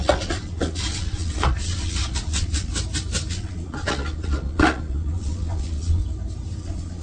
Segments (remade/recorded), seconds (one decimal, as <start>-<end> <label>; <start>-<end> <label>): 0.0-2.7 remade; 2.7-3.3 recorded; 3.3-6.0 remade; 6.0-6.6 recorded; 6.6-7.0 remade